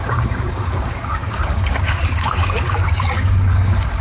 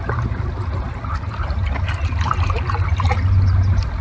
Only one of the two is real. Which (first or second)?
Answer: second